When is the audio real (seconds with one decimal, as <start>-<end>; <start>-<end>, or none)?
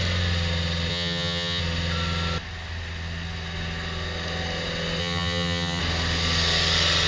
0.0-0.9; 1.6-5.0; 5.8-7.1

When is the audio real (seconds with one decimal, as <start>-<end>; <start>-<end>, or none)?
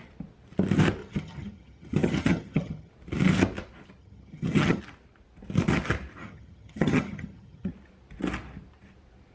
0.0-1.0; 2.9-4.0; 4.8-6.2; 7.7-9.3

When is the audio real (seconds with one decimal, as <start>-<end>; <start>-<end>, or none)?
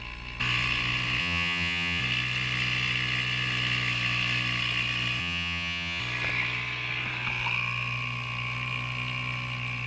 0.0-1.2; 2.0-5.2; 6.0-9.9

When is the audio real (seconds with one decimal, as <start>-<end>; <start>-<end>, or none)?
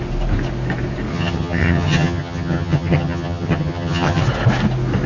0.0-1.1; 4.2-5.1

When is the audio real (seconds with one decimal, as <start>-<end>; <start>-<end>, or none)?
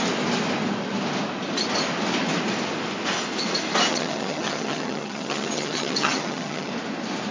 0.0-3.9; 6.7-7.3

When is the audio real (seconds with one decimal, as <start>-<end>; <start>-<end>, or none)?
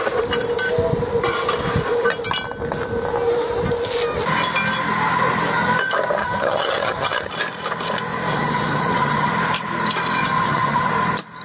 0.0-6.2; 7.3-8.3; 9.3-10.2; 10.9-11.4